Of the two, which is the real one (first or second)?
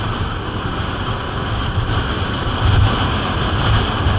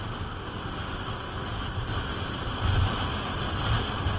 second